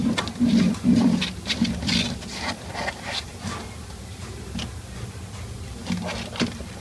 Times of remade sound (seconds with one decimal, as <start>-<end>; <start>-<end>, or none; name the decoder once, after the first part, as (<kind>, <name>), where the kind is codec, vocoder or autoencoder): 0.0-4.1 (vocoder, BigVGAN v2)